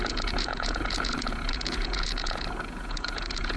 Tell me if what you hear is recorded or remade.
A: remade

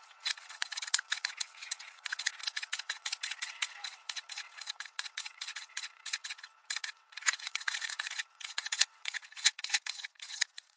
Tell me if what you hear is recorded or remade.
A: remade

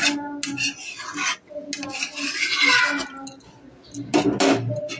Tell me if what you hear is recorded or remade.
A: recorded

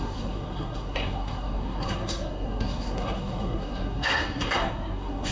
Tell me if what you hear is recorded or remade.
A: remade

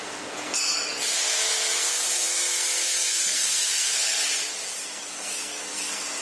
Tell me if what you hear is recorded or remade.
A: remade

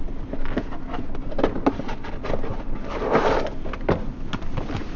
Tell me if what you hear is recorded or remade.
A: recorded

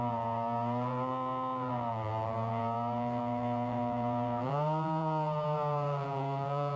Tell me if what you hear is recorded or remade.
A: remade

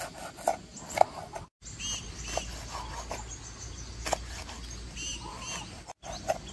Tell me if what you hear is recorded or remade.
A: recorded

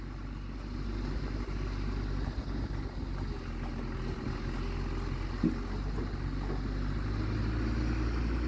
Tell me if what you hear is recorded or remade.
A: recorded